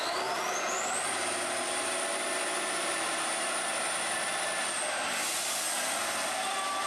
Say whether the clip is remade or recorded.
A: recorded